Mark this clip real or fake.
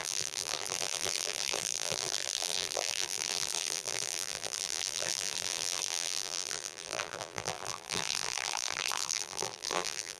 fake